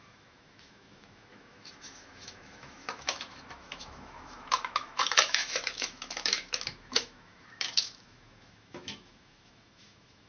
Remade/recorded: remade